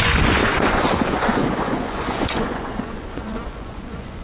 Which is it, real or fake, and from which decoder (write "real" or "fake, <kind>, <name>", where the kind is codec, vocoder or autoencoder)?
fake, vocoder, Vocos